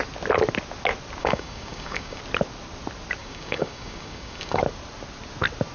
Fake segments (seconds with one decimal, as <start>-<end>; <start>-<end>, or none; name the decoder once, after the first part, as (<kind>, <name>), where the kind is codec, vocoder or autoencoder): 1.2-2.2 (codec, DAC); 3.2-4.6